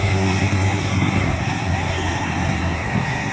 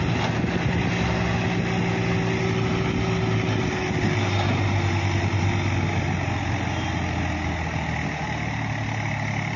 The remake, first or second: first